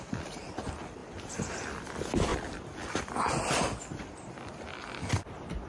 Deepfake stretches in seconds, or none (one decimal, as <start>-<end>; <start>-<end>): 1.0-1.5; 2.3-4.5